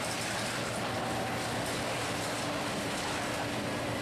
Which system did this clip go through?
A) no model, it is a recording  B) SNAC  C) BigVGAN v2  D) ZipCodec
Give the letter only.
A